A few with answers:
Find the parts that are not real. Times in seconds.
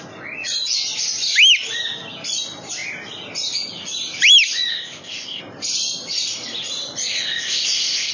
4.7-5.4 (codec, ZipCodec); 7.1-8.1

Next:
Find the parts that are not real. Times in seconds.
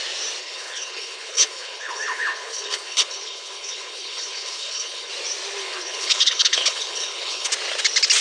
0.4-5.1 (codec, HILCodec); 5.6-7.5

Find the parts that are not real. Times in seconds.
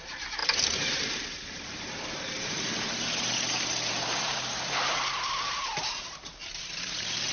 0.4-4.7 (vocoder, BigVGAN v2); 6.4-7.3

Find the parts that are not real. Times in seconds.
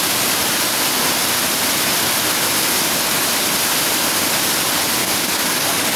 5.0-6.0 (codec, DAC)